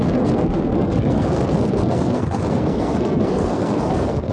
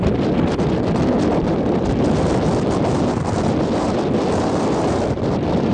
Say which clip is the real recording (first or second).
second